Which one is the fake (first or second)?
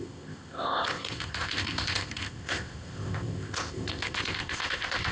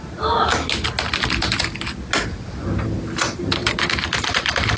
first